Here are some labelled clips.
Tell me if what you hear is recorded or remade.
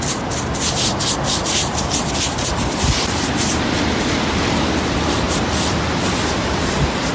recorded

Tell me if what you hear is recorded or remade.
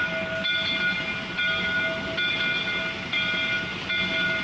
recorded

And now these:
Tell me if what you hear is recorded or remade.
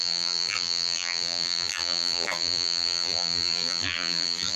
remade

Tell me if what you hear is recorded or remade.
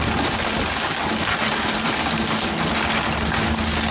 recorded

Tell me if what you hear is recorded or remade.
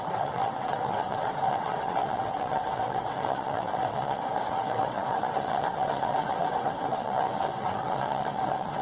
remade